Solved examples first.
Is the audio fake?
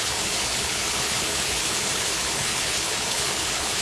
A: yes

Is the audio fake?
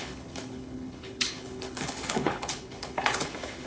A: yes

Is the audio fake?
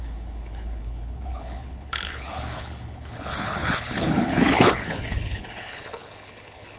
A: yes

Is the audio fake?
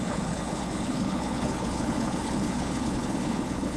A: yes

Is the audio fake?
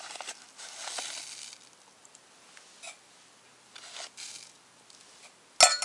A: no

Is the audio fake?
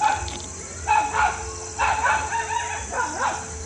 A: no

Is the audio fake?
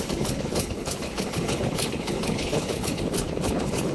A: yes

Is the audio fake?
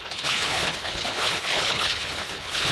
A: yes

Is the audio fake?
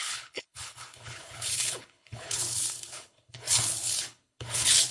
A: yes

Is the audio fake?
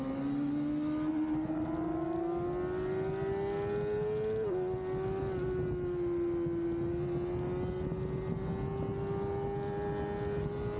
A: no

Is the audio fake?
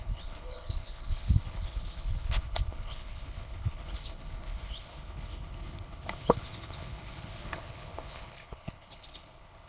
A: yes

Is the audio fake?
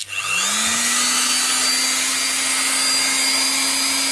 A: no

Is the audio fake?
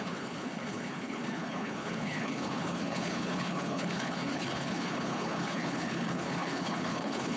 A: yes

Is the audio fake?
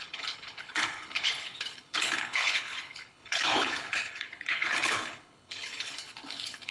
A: yes